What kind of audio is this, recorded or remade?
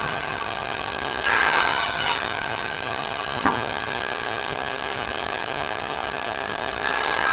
remade